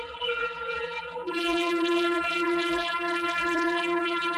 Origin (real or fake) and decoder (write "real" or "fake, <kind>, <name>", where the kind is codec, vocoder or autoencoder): fake, vocoder, BigVGAN v2